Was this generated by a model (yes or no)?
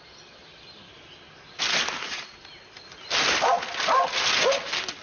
no